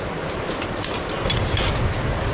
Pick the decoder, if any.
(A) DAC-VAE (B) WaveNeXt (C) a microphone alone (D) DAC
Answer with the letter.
C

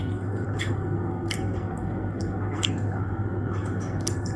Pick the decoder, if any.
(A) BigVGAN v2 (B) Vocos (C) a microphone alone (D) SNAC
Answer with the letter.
D